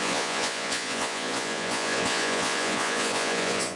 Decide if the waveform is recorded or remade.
remade